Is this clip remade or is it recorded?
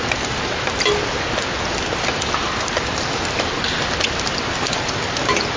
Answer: recorded